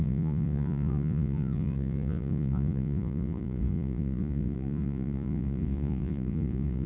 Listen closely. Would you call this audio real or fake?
fake